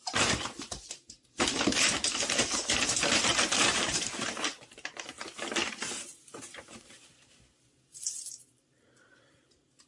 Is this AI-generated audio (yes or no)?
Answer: yes